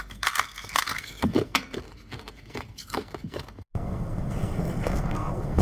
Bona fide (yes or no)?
no